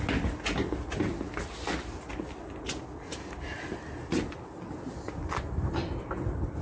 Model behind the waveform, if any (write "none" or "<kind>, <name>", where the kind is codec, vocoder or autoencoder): none